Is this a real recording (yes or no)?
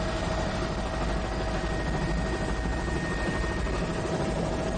yes